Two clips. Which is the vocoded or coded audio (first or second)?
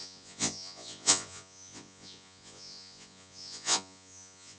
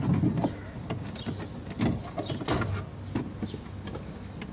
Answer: first